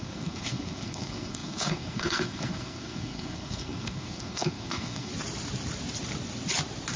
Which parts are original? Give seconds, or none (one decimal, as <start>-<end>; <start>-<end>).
5.1-7.0